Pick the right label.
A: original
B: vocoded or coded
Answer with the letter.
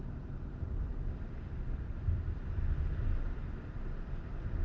B